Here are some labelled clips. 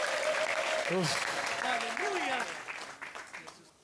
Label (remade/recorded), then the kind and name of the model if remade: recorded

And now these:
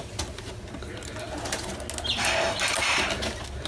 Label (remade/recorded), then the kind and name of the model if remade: recorded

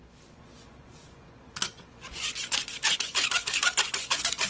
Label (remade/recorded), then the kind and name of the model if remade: remade, vocoder, Vocos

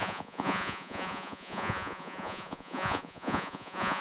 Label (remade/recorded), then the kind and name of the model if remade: remade, vocoder, Vocos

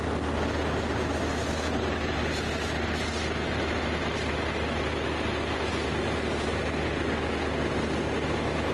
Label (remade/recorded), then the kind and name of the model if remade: recorded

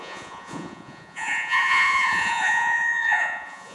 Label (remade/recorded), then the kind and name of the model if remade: remade, vocoder, Vocos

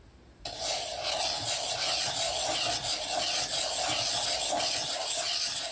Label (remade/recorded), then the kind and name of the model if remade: recorded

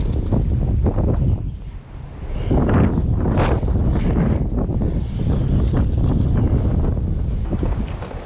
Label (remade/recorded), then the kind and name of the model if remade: recorded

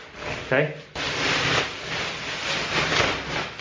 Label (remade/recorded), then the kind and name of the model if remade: recorded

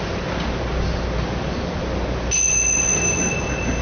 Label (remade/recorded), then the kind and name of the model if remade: recorded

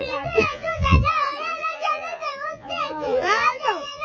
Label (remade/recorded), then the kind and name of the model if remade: remade, vocoder, Vocos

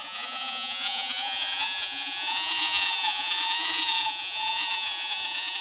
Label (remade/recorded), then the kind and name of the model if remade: remade, vocoder, Vocos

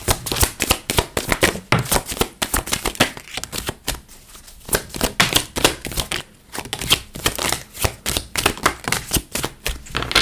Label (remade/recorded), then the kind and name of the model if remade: recorded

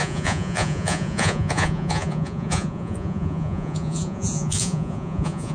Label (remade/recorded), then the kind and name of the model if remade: remade, vocoder, Vocos